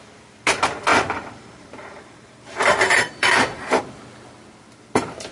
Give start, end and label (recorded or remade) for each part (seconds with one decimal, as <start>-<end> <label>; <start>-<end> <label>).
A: 0.0-0.9 recorded; 0.9-3.8 remade; 3.8-5.3 recorded